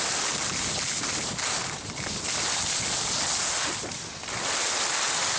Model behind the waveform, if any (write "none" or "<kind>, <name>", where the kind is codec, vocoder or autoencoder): none